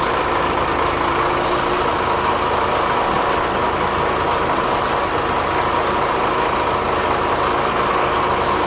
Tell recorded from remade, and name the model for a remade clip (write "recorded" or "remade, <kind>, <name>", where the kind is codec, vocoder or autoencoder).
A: recorded